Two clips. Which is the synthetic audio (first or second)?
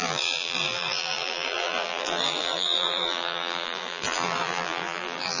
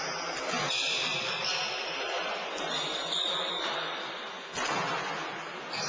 first